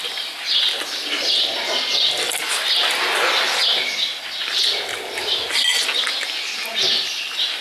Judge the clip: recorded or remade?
recorded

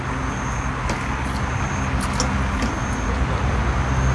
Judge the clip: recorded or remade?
recorded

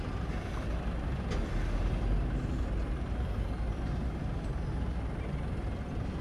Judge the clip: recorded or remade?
recorded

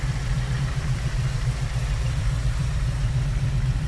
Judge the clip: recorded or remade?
remade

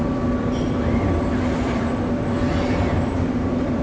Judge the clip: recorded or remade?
remade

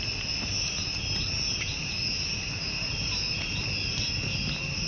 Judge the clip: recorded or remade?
recorded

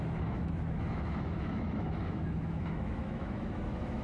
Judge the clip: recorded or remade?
remade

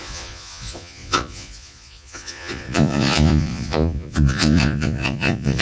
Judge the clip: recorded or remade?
remade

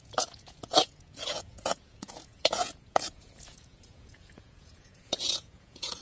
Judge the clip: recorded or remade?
remade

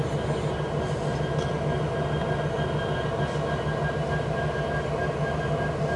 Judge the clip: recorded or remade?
recorded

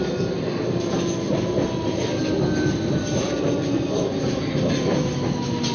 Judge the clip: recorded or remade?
recorded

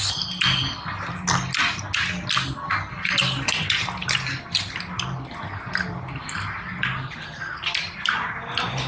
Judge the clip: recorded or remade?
recorded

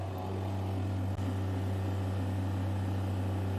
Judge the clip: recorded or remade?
recorded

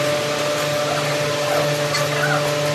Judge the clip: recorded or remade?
recorded